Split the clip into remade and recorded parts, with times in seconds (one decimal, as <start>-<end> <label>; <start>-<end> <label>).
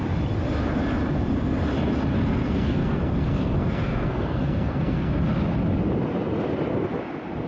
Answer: 0.0-2.1 recorded; 2.1-5.1 remade; 5.1-7.5 recorded